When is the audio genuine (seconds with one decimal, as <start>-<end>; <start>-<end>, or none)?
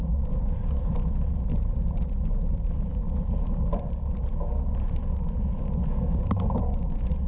0.0-7.3